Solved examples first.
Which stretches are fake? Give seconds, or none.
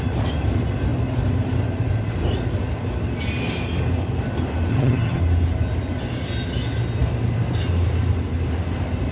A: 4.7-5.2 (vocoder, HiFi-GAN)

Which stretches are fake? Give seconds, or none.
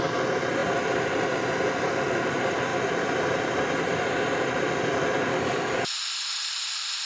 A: 5.3-5.9 (codec, DAC)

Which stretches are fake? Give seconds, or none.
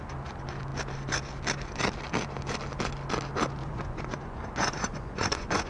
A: 3.6-5.7 (vocoder, Vocos)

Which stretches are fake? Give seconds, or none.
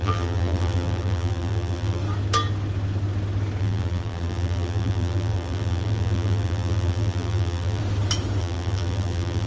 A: 0.0-2.0 (vocoder, BigVGAN v2); 3.6-7.8; 8.4-9.5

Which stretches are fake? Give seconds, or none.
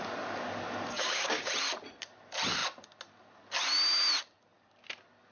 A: 0.9-1.5 (codec, DAC)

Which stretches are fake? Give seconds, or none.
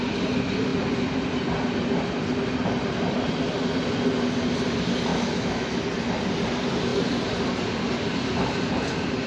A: 5.1-5.7 (autoencoder, DAC-VAE)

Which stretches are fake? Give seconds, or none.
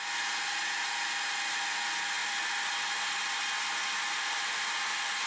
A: none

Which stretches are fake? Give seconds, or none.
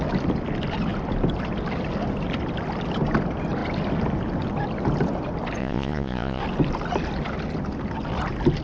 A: 5.6-6.4 (vocoder, Vocos)